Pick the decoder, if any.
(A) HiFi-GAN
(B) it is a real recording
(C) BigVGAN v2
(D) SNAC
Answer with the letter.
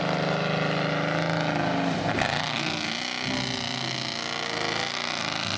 B